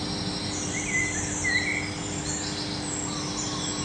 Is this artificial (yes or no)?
no